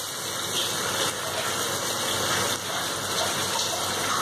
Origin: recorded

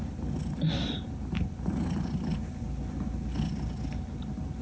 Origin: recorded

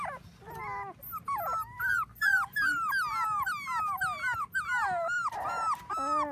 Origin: recorded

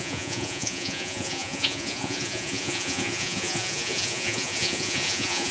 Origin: remade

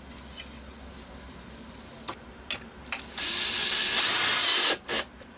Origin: recorded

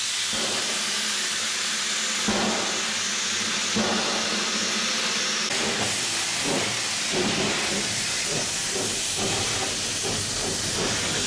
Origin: recorded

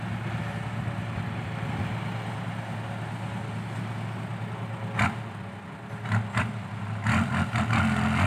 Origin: recorded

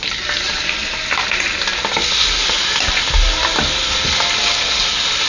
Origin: recorded